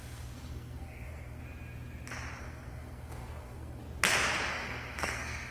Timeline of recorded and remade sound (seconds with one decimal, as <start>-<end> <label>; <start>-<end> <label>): 0.0-1.4 remade; 1.4-2.4 recorded; 2.4-3.8 remade; 3.8-4.5 recorded; 4.5-5.5 remade